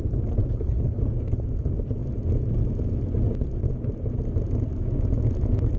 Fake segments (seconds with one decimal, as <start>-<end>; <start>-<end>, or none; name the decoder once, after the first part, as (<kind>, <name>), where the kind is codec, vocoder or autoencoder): 0.4-1.0 (codec, HILCodec)